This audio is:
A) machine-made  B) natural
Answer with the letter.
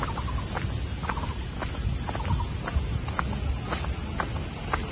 B